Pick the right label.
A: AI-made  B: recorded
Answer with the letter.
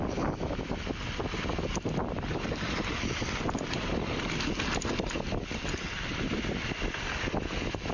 B